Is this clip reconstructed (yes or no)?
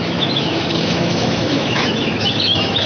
yes